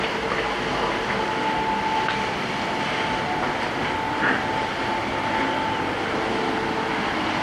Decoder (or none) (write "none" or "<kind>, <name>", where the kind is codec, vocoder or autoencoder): none